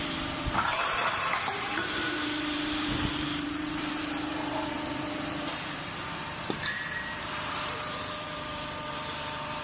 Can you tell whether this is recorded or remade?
remade